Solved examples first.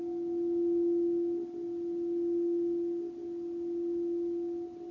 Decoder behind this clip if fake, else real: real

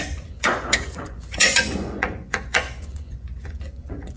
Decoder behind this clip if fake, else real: fake, vocoder, Vocos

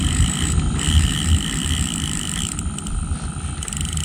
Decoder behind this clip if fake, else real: real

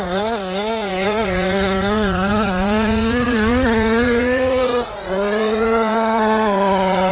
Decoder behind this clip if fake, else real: fake, vocoder, Vocos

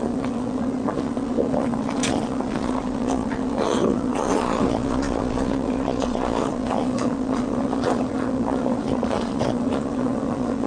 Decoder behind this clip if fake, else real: fake, vocoder, Vocos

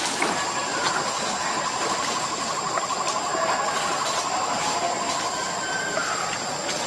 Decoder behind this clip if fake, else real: real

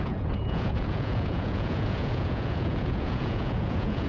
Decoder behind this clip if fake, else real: fake, vocoder, Vocos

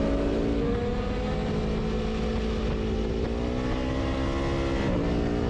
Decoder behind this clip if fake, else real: real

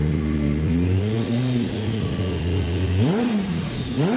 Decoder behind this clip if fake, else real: fake, vocoder, Vocos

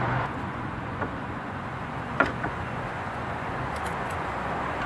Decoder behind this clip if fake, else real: fake, vocoder, Vocos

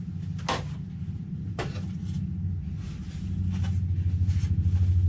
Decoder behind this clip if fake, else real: real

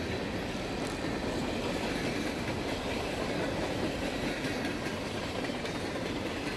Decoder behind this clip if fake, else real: real